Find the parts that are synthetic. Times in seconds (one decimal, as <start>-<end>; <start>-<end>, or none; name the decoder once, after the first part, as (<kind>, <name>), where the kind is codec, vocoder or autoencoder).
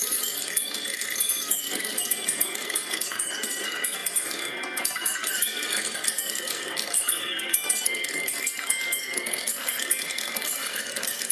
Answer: 0.0-11.3 (codec, SNAC)